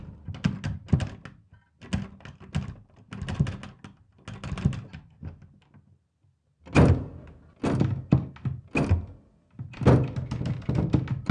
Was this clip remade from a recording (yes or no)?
no